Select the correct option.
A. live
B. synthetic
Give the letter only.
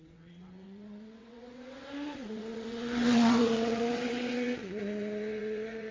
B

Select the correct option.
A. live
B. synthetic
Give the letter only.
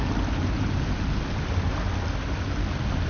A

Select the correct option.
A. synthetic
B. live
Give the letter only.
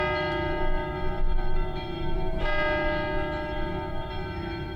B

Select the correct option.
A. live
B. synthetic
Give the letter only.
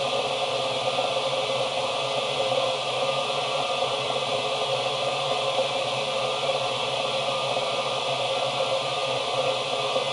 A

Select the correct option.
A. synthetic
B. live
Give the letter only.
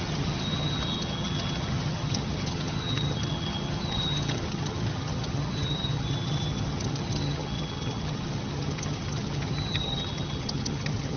A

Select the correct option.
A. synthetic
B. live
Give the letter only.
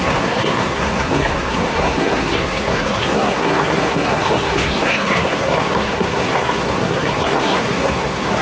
A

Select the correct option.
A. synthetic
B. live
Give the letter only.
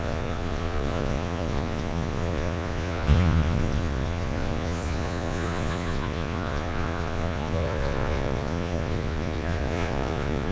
A